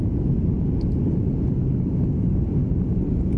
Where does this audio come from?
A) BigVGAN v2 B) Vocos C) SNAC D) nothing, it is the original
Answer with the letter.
D